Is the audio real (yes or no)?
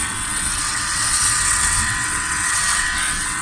no